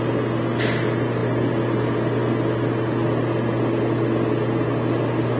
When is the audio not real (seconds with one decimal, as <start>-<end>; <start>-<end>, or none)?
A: none